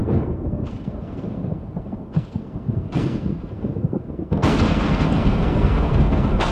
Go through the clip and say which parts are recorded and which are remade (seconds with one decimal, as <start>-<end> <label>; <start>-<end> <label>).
0.0-6.5 remade